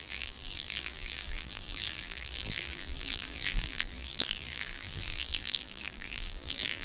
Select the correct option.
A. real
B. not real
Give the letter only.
B